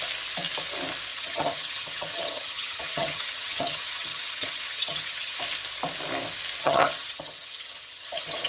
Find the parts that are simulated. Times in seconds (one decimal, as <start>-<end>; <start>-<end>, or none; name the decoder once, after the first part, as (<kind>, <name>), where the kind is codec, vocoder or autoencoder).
1.1-5.4 (vocoder, HiFi-GAN); 6.6-8.5